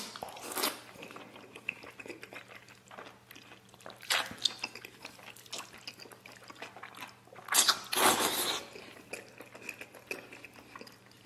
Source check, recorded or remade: recorded